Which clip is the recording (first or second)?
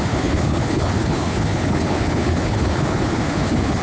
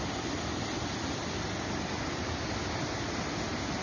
second